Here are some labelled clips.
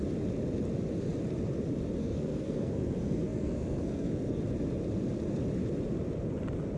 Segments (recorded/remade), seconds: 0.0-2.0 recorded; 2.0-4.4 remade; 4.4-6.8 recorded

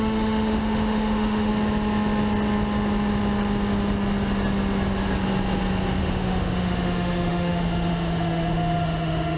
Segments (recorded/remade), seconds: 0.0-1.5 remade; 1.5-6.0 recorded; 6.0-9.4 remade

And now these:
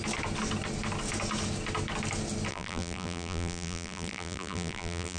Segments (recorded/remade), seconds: 0.0-2.5 recorded; 2.5-5.2 remade

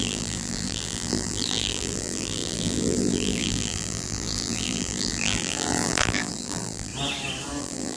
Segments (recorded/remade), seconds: 0.0-6.9 remade; 6.9-7.6 recorded; 7.6-8.0 remade